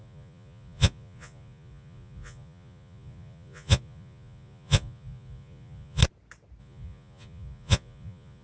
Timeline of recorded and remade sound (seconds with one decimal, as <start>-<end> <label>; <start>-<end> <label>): 0.0-6.0 remade; 6.0-6.6 recorded; 6.6-8.4 remade

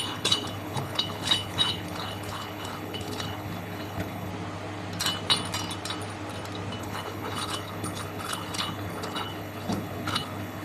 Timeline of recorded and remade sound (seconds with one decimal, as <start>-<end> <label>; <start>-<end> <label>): 0.0-4.3 remade; 4.3-6.8 recorded; 6.8-10.6 remade

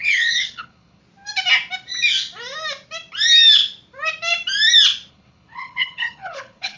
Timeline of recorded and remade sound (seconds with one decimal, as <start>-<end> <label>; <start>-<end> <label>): 0.0-1.0 remade; 1.0-5.1 recorded; 5.1-6.8 remade